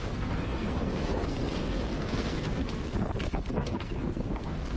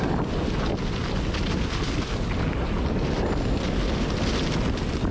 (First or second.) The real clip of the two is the second